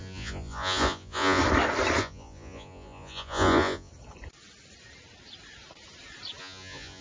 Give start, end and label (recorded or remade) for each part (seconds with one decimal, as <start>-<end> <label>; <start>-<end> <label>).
0.0-1.4 remade; 1.4-2.0 recorded; 2.0-3.9 remade; 3.9-6.4 recorded; 6.4-7.0 remade